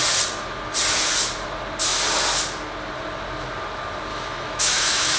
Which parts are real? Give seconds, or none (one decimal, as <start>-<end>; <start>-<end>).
0.0-4.1